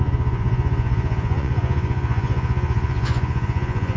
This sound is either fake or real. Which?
fake